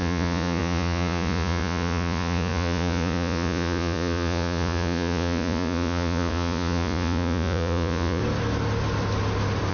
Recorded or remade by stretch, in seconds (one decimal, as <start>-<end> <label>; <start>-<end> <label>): 0.0-8.2 remade; 8.2-9.7 recorded